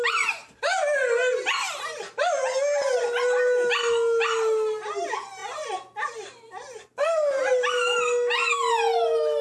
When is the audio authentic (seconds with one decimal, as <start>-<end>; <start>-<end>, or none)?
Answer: 0.0-9.4